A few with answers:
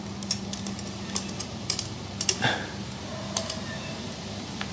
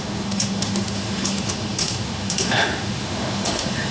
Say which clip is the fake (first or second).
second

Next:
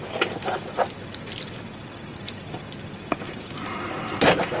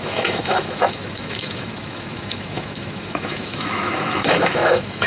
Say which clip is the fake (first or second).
second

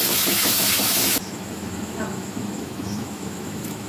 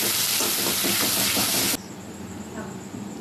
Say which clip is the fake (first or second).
first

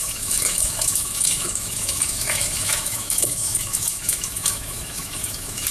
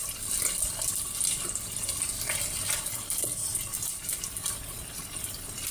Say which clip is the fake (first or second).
first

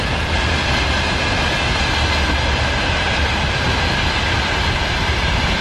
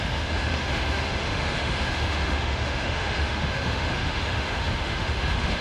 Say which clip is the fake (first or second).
second